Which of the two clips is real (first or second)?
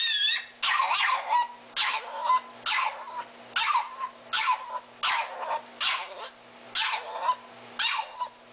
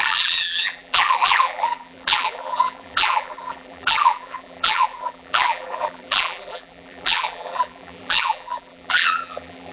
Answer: first